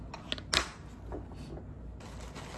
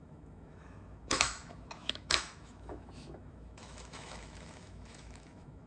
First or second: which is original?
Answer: first